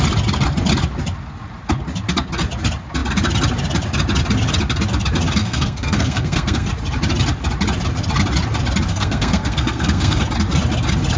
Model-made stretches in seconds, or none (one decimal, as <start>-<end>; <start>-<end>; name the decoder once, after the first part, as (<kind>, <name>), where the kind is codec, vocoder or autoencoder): 5.4-6.7 (codec, SNAC); 8.9-10.2